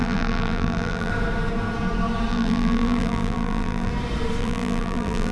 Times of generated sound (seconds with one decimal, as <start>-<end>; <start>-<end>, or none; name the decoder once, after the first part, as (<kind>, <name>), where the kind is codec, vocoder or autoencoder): 0.0-1.1 (vocoder, BigVGAN v2); 2.3-3.9; 4.4-5.3